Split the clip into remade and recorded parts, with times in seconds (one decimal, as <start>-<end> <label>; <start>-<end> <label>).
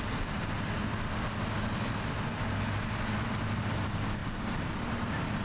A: 0.0-4.2 recorded; 4.2-5.0 remade; 5.0-5.4 recorded